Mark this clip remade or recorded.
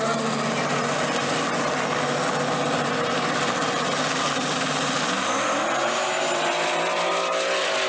recorded